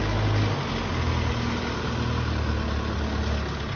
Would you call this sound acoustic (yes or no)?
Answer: yes